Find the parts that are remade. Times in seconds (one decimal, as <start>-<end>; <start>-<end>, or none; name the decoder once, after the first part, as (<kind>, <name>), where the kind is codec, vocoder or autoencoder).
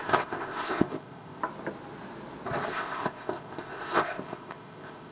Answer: 0.0-1.4 (codec, ZipCodec); 2.7-5.1